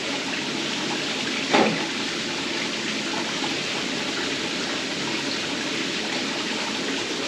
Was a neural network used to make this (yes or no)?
no